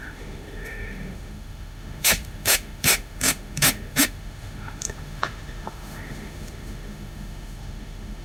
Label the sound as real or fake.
fake